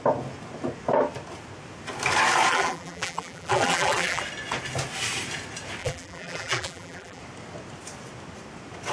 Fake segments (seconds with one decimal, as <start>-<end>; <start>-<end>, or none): 2.5-4.2; 5.8-7.2